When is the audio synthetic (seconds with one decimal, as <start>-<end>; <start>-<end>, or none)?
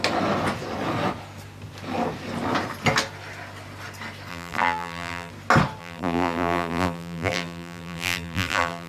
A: 4.3-5.3; 5.8-8.9